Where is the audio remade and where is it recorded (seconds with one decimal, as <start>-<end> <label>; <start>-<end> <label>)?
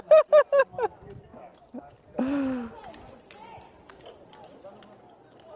0.0-5.6 recorded